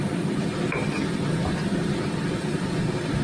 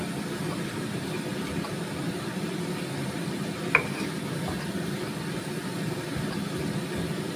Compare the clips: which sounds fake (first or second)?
second